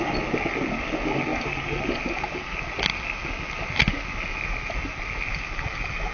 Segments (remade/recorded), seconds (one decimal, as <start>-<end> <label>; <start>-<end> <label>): 0.0-6.1 recorded